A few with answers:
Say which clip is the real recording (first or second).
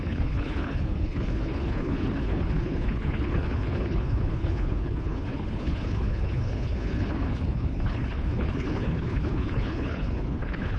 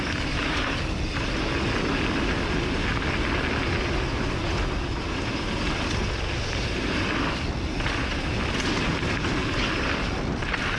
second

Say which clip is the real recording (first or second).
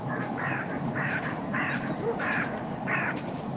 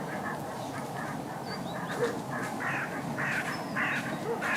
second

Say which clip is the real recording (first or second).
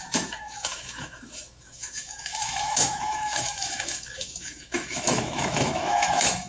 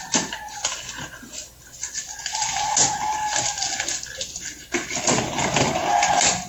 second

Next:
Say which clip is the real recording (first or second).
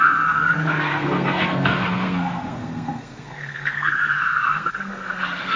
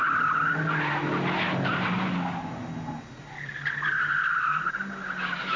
second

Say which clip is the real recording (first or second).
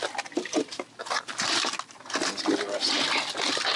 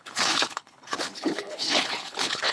first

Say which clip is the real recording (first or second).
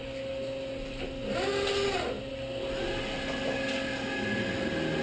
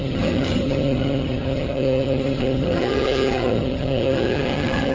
first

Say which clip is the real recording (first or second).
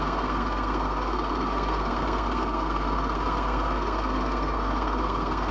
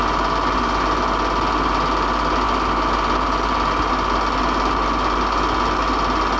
second